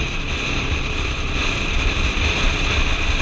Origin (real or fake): real